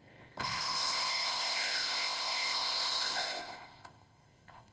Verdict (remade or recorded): remade